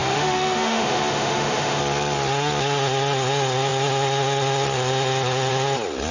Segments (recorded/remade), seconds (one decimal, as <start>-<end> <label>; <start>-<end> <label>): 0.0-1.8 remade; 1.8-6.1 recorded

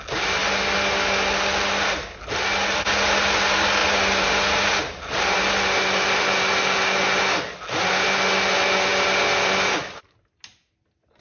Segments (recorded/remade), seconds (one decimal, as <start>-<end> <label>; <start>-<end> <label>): 0.0-11.2 recorded

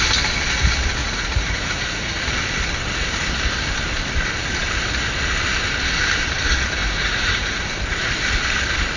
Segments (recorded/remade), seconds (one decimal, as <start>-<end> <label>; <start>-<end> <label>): 0.0-1.0 recorded; 1.0-2.2 remade; 2.2-6.8 recorded; 6.8-7.6 remade; 7.6-9.0 recorded

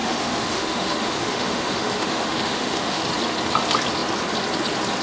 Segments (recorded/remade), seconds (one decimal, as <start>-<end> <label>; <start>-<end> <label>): 0.0-3.0 remade; 3.0-5.0 recorded

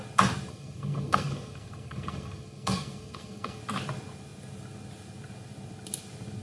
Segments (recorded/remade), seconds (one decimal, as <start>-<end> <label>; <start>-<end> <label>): 0.0-0.5 recorded; 0.5-3.6 remade; 3.6-6.4 recorded

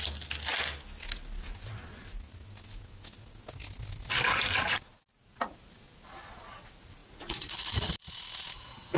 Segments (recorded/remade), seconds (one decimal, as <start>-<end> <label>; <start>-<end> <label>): 0.0-7.0 recorded; 7.0-7.9 remade; 7.9-9.0 recorded

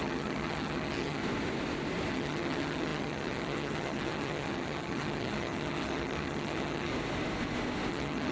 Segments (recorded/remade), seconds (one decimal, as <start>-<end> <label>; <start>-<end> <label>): 0.0-1.2 remade; 1.2-2.1 recorded; 2.1-6.9 remade; 6.9-7.9 recorded; 7.9-8.3 remade